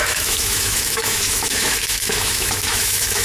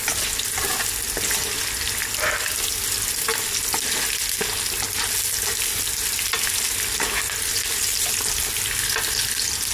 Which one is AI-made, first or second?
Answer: first